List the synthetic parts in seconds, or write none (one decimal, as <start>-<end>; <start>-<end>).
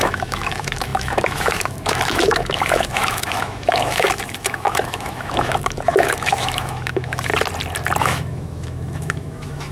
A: 0.0-7.3; 8.0-9.7